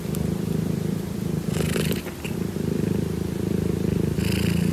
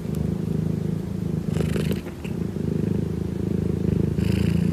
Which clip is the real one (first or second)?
second